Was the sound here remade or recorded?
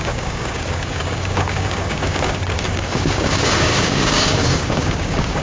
remade